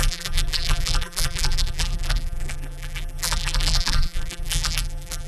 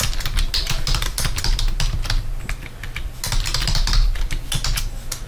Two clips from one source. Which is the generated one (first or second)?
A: first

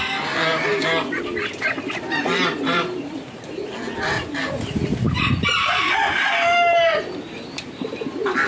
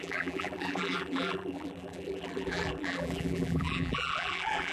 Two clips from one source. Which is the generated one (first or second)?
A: second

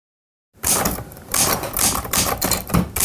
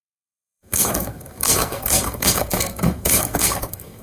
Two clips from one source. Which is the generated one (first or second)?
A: second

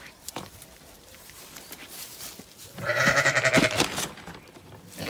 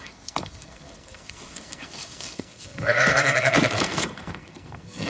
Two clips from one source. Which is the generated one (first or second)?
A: second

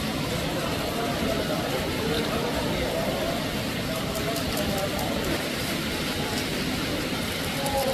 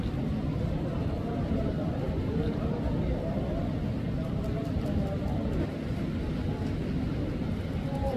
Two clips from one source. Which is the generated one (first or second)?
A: first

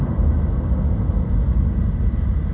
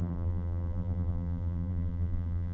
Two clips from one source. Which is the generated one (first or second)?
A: second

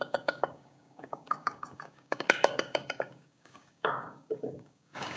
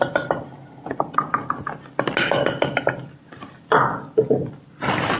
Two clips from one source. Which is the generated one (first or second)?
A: first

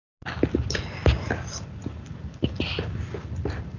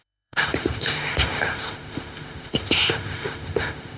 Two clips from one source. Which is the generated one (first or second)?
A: second